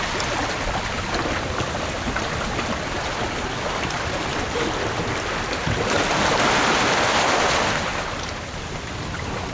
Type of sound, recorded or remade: recorded